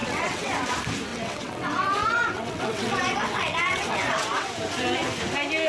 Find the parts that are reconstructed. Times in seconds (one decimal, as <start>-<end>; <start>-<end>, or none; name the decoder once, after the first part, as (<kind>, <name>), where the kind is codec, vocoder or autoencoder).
0.0-0.5 (vocoder, WaveNeXt); 1.1-4.5

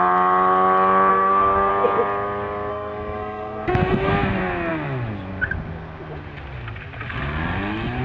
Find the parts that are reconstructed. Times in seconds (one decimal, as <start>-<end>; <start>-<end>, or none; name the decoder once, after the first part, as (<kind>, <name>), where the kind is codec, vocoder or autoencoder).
1.1-1.7 (codec, SNAC); 2.7-4.1

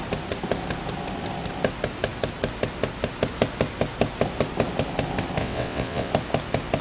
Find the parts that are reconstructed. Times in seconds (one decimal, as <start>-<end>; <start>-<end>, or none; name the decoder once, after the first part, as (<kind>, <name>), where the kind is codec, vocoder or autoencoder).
5.4-6.1 (vocoder, WaveNeXt)

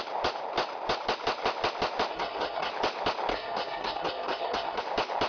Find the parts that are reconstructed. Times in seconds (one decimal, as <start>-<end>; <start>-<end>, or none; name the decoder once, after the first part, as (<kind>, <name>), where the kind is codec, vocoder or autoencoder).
2.1-2.7 (codec, SNAC); 3.3-4.8

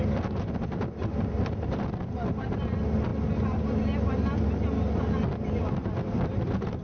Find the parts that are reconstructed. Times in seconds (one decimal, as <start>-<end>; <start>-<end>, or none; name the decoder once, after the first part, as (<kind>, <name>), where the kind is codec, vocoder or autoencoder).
none